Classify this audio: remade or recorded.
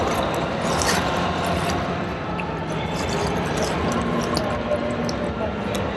recorded